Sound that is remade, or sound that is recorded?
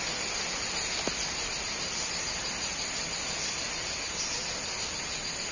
recorded